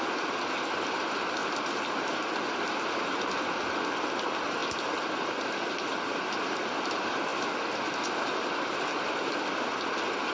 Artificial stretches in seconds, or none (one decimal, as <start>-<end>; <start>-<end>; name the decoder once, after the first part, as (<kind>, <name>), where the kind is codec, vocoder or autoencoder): none